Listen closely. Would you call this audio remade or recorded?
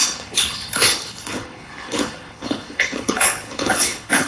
remade